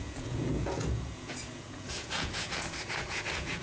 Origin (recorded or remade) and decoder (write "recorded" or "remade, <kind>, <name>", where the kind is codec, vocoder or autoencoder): remade, vocoder, Vocos